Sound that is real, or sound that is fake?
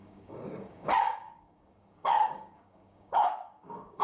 fake